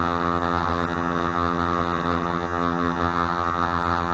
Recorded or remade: remade